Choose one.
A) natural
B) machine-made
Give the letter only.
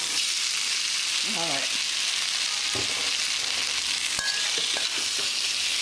A